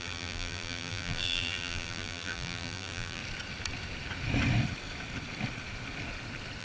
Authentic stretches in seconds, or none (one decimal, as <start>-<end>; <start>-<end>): 3.2-6.6